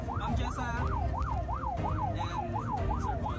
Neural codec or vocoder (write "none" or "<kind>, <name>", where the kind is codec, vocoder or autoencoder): none